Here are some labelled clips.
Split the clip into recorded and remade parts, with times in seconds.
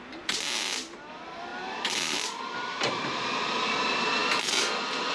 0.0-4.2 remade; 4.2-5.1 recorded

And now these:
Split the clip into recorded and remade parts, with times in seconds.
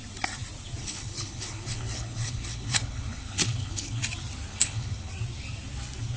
0.0-0.8 recorded; 0.8-4.0 remade; 4.0-4.5 recorded; 4.5-5.1 remade; 5.1-6.2 recorded